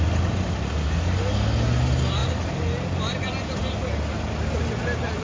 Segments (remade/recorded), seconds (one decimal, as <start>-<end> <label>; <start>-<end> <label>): 0.0-2.2 recorded; 2.2-3.3 remade; 3.3-5.2 recorded